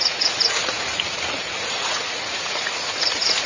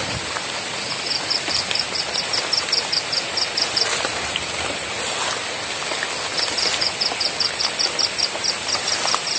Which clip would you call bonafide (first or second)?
second